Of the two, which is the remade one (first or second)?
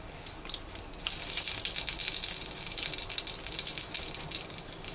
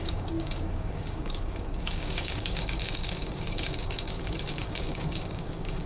second